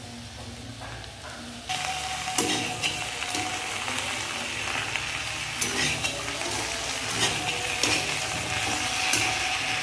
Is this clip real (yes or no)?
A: yes